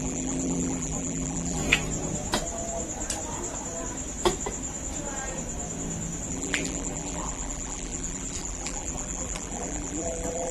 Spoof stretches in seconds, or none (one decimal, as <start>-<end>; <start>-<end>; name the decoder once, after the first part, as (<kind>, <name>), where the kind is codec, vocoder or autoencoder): 0.0-1.6 (vocoder, BigVGAN v2); 6.3-10.5